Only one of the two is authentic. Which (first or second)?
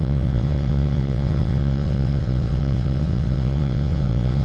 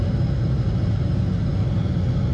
second